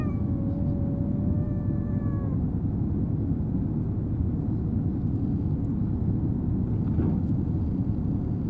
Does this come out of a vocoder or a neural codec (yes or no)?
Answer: no